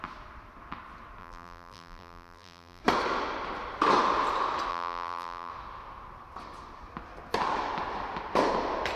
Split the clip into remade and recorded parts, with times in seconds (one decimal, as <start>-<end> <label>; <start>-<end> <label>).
0.0-1.2 recorded; 1.2-2.8 remade; 2.8-4.7 recorded; 4.7-5.5 remade; 5.5-9.0 recorded